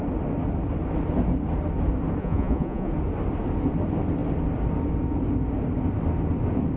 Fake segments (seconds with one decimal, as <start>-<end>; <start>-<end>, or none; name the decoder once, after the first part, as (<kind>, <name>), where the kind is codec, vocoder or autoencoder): 2.2-2.9 (vocoder, Vocos)